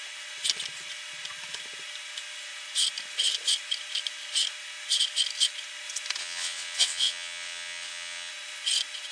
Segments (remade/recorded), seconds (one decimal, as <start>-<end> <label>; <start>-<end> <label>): 0.0-6.2 recorded; 6.2-8.3 remade; 8.3-9.1 recorded